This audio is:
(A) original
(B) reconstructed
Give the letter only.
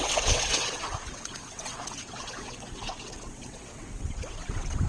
B